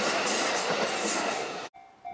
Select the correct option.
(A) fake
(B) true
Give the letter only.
B